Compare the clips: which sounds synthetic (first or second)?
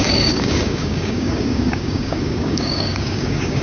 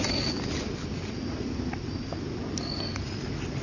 first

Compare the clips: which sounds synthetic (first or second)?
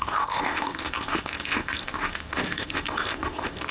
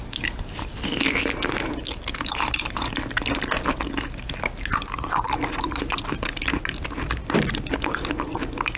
first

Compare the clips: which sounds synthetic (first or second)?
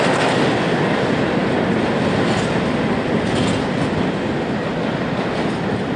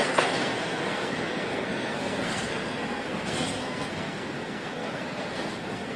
second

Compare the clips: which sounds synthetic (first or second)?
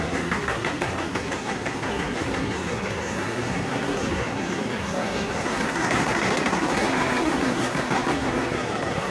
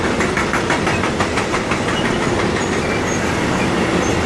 first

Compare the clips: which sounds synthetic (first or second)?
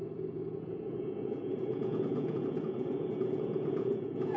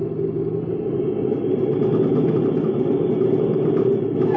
first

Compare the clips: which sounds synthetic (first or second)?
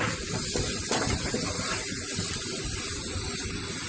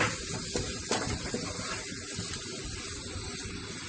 first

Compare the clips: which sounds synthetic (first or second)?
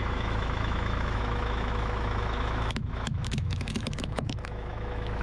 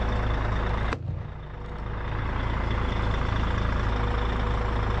first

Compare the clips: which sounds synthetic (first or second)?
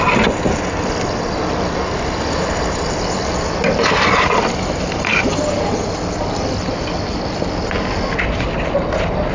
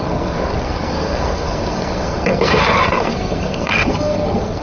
second